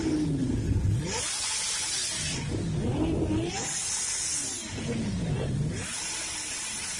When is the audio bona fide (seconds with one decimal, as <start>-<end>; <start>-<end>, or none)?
0.0-7.0